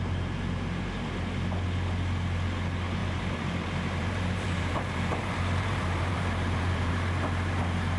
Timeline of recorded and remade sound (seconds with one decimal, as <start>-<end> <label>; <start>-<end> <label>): 0.0-3.0 recorded; 3.0-6.9 remade; 6.9-8.0 recorded